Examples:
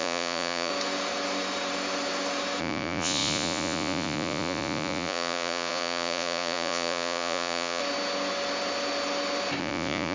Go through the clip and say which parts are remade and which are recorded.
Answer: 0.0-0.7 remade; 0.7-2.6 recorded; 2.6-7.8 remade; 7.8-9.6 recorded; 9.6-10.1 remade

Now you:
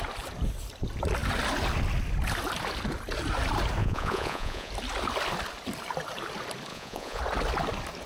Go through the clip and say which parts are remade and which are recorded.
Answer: 0.0-3.8 recorded; 3.8-4.7 remade; 4.7-6.7 recorded; 6.7-7.2 remade; 7.2-8.1 recorded